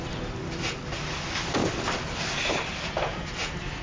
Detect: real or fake fake